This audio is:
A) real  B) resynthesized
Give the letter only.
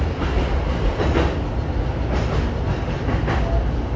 A